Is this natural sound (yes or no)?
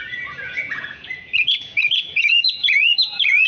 no